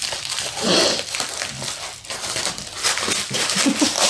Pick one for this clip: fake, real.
real